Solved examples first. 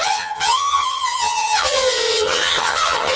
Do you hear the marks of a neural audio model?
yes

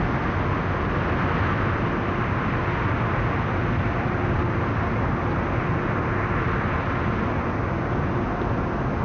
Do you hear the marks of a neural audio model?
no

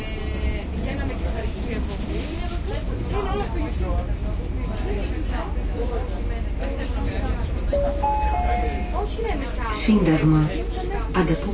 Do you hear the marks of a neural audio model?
no